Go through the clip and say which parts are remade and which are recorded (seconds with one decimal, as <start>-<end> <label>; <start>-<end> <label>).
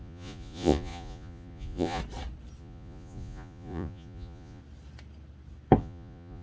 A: 0.0-2.0 remade; 2.0-2.6 recorded; 2.6-4.6 remade; 4.6-5.8 recorded; 5.8-6.4 remade